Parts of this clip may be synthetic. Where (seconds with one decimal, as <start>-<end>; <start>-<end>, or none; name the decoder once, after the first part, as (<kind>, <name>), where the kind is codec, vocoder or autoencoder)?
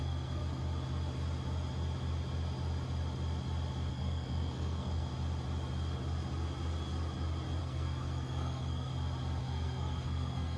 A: 0.0-0.4 (codec, SNAC); 3.9-5.1; 7.6-8.9; 9.4-10.6